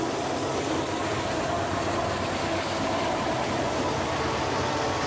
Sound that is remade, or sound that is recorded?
recorded